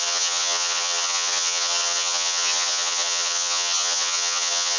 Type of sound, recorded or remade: remade